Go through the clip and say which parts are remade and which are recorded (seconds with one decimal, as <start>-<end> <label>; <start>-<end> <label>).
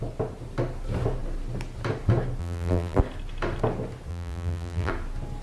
0.0-2.4 recorded; 2.4-3.0 remade; 3.0-4.1 recorded; 4.1-4.9 remade; 4.9-5.4 recorded